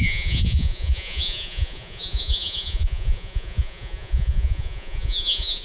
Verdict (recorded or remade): remade